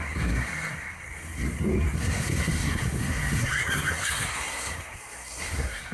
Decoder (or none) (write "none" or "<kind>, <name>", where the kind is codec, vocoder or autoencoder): codec, SNAC